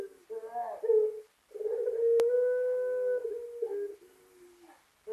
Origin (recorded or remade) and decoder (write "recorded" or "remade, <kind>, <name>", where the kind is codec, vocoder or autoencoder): recorded